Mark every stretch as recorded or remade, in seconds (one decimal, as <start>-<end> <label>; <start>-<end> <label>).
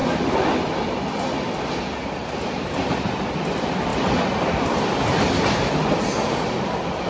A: 0.0-7.1 recorded